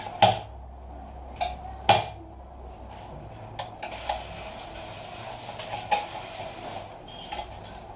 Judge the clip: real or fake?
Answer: real